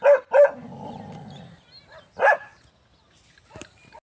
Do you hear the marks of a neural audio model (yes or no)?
no